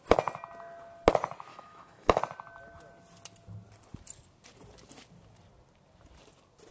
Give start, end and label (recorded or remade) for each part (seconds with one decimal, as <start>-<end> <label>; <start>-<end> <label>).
0.0-1.5 recorded; 1.5-2.2 remade; 2.2-6.7 recorded